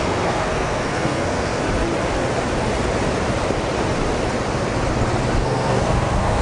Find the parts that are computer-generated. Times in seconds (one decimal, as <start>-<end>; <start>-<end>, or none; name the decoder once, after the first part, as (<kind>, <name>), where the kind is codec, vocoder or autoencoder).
0.0-1.6 (codec, SNAC); 5.4-6.4

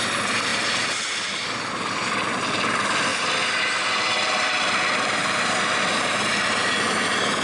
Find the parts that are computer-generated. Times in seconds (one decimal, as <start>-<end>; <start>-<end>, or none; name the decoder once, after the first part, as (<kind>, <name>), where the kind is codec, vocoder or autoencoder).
none

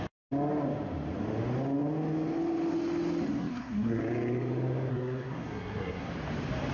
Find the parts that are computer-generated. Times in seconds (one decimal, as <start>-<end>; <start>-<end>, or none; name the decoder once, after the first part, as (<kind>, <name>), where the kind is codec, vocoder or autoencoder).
3.4-4.0 (codec, SNAC); 4.9-6.1

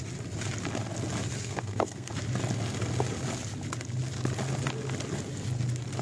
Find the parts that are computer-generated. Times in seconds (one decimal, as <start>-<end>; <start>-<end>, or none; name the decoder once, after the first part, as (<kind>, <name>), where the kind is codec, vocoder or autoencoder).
1.4-2.1 (codec, SNAC)

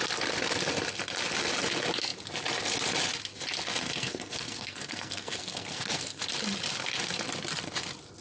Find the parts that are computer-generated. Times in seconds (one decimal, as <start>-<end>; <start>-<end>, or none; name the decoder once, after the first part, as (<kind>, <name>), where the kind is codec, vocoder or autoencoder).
3.8-6.2 (codec, SNAC)

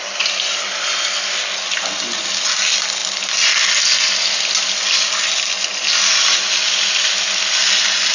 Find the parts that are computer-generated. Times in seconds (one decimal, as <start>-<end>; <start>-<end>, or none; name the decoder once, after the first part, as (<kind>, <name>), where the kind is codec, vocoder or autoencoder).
none

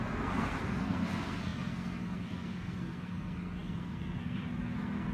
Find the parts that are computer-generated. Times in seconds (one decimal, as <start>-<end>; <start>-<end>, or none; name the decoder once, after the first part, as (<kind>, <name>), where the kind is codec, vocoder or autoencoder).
0.0-5.1 (codec, SNAC)

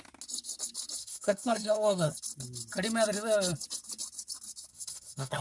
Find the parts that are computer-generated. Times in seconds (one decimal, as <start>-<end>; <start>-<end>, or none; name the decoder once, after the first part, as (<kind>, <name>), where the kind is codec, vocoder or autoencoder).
1.0-2.1 (codec, SNAC); 4.7-5.4